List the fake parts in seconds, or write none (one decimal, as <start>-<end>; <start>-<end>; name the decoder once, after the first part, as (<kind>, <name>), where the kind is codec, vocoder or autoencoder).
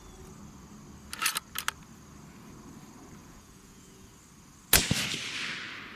3.2-4.1 (vocoder, Vocos)